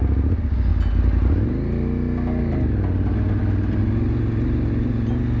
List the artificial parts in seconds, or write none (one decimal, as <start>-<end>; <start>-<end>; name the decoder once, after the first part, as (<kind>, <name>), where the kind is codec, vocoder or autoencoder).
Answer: none